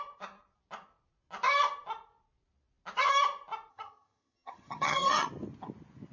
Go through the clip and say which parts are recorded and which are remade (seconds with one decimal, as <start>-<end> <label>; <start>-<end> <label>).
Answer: 0.0-3.7 recorded; 3.7-5.3 remade; 5.3-6.1 recorded